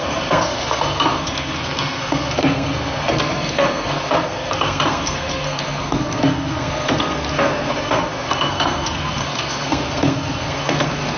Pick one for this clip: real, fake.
fake